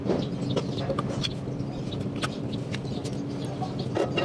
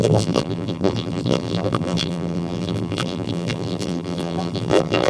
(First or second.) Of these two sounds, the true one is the first